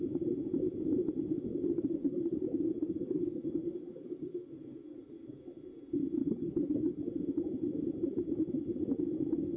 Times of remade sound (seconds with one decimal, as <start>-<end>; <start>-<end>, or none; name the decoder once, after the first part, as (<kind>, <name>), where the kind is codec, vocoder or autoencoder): 1.5-5.4 (codec, DAC); 6.2-7.0